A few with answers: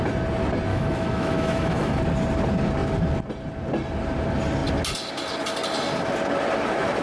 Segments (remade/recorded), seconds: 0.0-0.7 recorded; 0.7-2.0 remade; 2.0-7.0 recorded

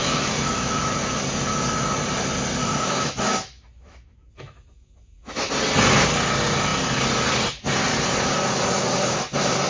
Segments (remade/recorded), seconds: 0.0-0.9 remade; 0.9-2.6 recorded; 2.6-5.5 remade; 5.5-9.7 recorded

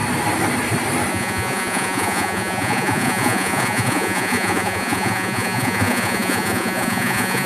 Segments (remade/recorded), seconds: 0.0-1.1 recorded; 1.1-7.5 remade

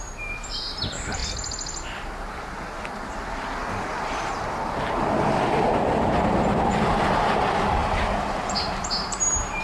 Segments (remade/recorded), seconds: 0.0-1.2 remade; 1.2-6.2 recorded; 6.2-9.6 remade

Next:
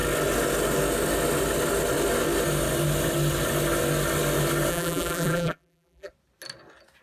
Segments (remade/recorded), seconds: 0.0-4.7 recorded; 4.7-6.1 remade; 6.1-7.0 recorded

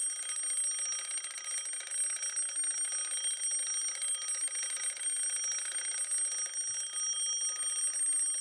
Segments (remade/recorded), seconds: 0.0-8.4 recorded

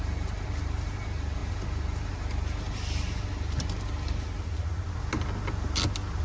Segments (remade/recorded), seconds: 0.0-6.2 recorded